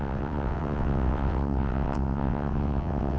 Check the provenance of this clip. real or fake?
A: fake